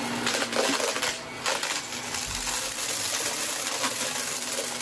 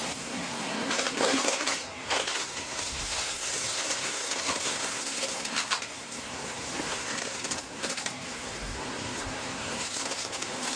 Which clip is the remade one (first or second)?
second